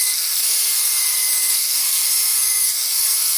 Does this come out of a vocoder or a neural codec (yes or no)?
yes